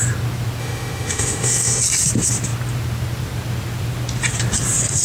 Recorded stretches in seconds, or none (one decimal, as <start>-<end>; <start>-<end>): 0.0-0.6; 1.8-5.0